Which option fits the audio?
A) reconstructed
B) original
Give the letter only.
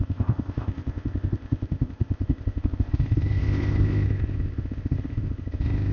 A